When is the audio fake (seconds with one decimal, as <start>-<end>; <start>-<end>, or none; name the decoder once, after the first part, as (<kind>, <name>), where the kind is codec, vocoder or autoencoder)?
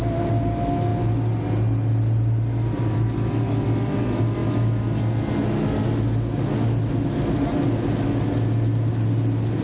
none